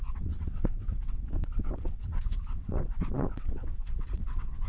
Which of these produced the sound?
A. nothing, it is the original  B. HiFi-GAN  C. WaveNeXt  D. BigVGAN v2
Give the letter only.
C